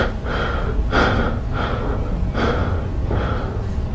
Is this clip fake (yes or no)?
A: no